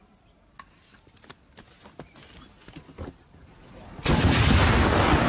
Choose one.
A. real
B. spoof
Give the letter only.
A